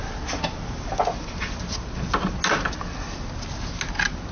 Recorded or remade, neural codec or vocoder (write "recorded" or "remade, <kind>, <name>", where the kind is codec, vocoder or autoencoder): recorded